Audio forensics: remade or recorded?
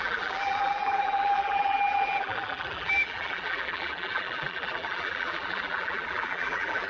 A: remade